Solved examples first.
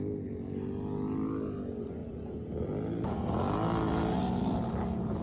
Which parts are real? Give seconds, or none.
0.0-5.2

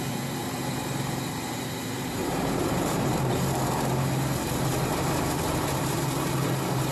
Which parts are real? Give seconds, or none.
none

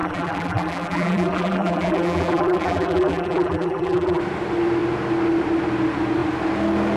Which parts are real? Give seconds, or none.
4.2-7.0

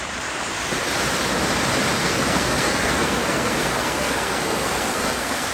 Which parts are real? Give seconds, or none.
0.0-2.0

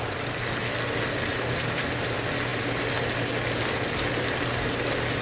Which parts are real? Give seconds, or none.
0.0-1.3; 1.9-5.2

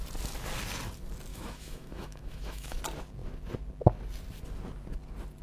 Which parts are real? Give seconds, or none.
0.0-1.3; 2.8-5.4

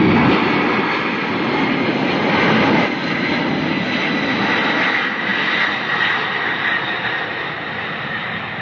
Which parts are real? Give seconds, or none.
0.0-8.6